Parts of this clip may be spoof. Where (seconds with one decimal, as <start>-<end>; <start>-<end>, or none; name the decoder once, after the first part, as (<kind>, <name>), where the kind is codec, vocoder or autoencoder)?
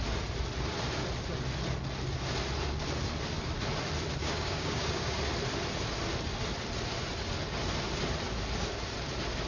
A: 4.2-5.2 (codec, DAC)